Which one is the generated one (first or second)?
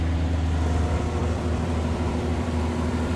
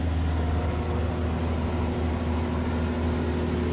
first